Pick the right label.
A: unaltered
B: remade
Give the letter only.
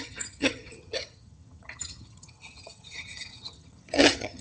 B